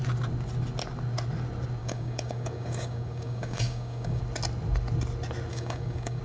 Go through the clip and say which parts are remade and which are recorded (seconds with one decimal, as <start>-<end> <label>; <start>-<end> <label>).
0.0-1.8 recorded; 1.8-4.2 remade; 4.2-5.5 recorded; 5.5-6.2 remade